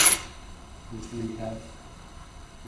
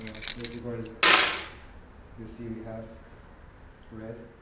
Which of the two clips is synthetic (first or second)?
first